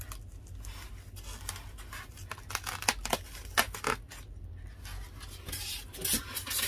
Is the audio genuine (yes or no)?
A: yes